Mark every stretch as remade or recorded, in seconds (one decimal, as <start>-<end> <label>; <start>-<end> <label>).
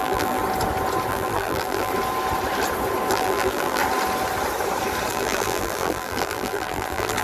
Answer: 0.0-0.4 remade; 0.4-1.1 recorded; 1.1-1.9 remade; 1.9-3.1 recorded; 3.1-3.8 remade; 3.8-5.1 recorded; 5.1-7.2 remade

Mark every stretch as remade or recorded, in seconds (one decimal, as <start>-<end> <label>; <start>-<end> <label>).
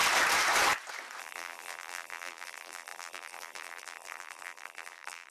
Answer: 0.0-1.2 recorded; 1.2-5.3 remade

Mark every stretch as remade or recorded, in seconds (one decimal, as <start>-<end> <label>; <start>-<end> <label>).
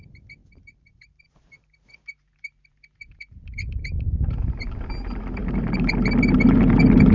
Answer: 0.0-0.4 recorded; 0.4-4.7 remade; 4.7-5.4 recorded; 5.4-5.9 remade; 5.9-7.1 recorded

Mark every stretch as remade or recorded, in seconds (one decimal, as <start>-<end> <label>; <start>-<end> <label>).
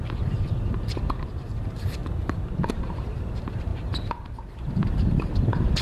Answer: 0.0-2.0 remade; 2.0-2.7 recorded; 2.7-5.8 remade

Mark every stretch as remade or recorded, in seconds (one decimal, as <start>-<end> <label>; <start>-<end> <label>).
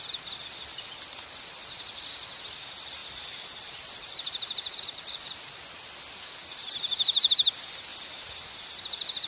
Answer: 0.0-3.0 recorded; 3.0-5.5 remade; 5.5-6.4 recorded; 6.4-7.3 remade; 7.3-9.3 recorded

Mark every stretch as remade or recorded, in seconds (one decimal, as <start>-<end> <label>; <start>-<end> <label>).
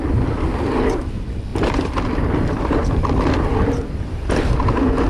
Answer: 0.0-1.5 recorded; 1.5-4.5 remade; 4.5-5.1 recorded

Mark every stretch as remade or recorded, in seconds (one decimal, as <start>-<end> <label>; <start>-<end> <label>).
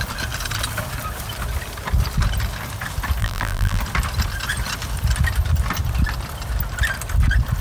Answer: 0.0-3.2 recorded; 3.2-3.8 remade; 3.8-7.6 recorded